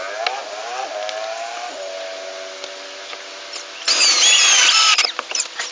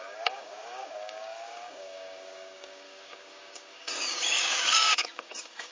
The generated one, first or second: second